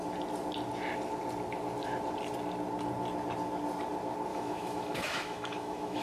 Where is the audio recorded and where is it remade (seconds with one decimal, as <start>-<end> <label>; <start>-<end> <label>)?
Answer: 0.0-4.3 recorded; 4.3-6.0 remade